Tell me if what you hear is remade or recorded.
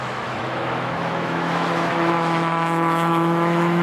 remade